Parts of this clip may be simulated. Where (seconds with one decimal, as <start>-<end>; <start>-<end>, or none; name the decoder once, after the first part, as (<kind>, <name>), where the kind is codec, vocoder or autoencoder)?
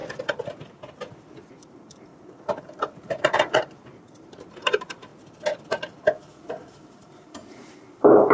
1.5-2.1 (vocoder, BigVGAN v2); 2.6-5.1; 6.7-8.3